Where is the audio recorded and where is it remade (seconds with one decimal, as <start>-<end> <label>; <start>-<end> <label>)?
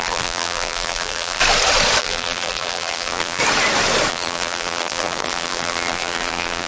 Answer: 0.0-1.4 remade; 1.4-2.0 recorded; 2.0-3.4 remade; 3.4-4.1 recorded; 4.1-6.7 remade